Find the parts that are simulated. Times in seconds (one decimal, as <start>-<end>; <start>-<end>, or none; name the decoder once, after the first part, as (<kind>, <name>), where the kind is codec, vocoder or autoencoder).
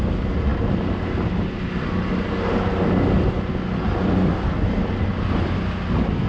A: none